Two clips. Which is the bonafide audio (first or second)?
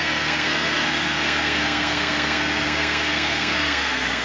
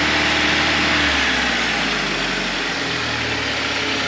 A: second